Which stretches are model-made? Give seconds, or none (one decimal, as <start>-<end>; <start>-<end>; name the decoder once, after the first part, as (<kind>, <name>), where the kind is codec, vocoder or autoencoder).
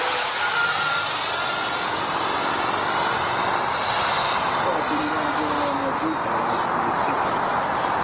none